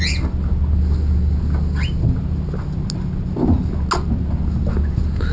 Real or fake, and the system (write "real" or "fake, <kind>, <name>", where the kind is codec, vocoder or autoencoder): real